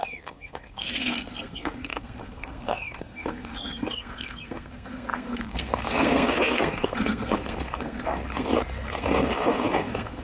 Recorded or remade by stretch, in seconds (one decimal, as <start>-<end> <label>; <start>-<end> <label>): 0.0-10.2 remade